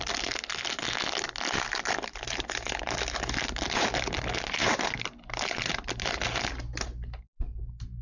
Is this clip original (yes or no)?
yes